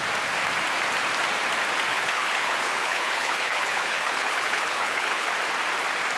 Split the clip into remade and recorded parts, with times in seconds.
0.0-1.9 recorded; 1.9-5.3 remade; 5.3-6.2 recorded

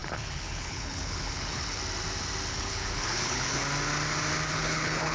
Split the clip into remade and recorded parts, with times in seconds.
0.0-1.8 remade; 1.8-2.5 recorded; 2.5-3.6 remade; 3.6-4.5 recorded; 4.5-5.1 remade